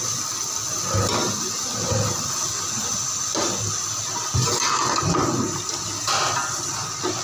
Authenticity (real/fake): real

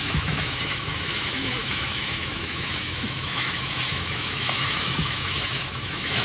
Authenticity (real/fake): fake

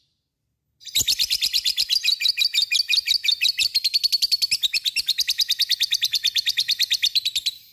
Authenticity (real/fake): real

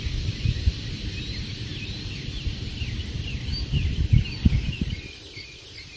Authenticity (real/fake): real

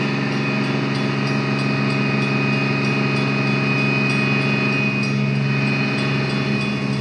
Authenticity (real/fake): real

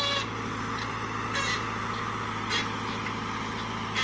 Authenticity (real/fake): real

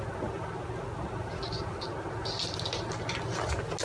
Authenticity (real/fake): real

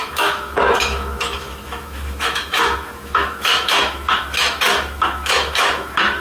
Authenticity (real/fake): fake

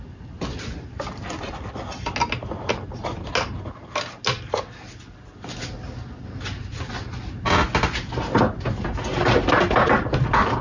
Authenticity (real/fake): real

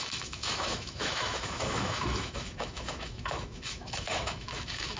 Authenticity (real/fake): fake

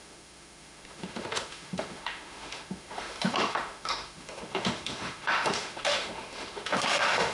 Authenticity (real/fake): fake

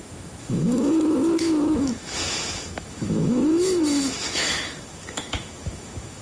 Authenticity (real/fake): fake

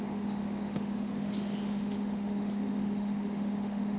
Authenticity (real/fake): fake